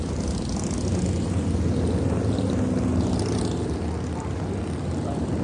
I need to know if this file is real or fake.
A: real